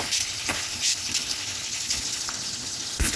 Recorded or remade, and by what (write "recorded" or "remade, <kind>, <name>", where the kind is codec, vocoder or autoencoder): remade, codec, HILCodec